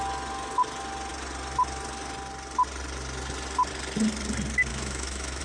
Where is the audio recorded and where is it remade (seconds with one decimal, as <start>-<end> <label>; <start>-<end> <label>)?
0.0-4.7 recorded; 4.7-5.4 remade

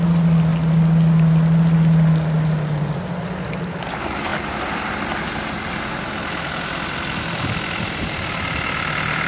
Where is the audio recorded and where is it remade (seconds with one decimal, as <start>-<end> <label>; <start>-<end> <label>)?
0.0-9.3 recorded